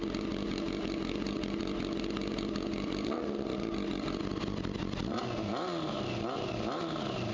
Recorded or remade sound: recorded